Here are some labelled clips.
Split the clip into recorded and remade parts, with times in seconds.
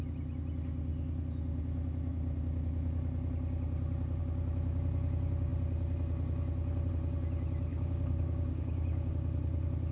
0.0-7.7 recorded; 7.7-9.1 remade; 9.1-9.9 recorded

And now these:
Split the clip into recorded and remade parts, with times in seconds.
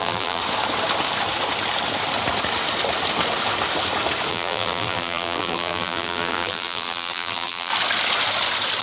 0.0-0.4 remade; 0.4-4.3 recorded; 4.3-7.7 remade; 7.7-8.8 recorded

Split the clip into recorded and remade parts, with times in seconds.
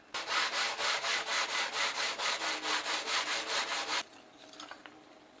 0.0-5.4 recorded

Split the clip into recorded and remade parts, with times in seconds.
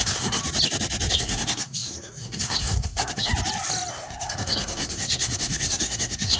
0.0-0.4 remade; 0.4-1.1 recorded; 1.1-3.3 remade; 3.3-3.9 recorded; 3.9-6.4 remade